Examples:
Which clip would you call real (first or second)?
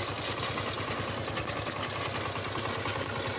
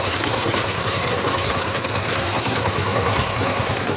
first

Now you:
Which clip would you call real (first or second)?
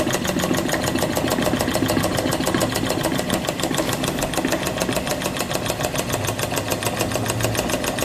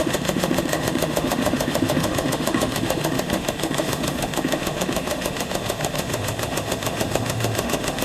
first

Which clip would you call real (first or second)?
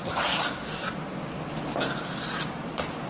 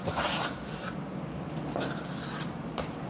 first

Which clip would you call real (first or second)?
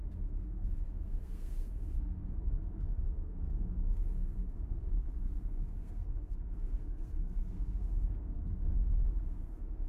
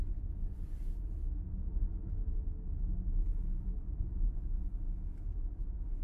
second